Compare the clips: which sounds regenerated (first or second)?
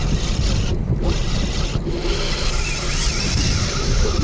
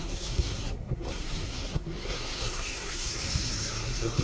second